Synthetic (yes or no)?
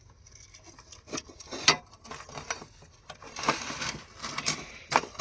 no